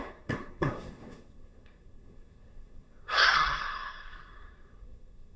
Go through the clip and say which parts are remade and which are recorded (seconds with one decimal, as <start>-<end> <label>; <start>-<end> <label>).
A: 0.0-5.4 remade